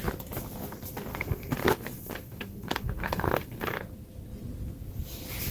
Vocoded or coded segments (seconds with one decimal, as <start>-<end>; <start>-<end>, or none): 1.1-3.8